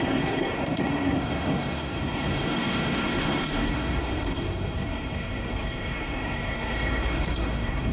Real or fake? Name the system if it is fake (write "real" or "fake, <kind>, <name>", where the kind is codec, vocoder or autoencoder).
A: fake, codec, SNAC